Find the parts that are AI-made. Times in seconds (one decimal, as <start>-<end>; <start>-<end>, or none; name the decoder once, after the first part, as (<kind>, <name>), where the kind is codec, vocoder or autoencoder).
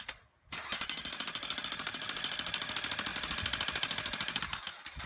none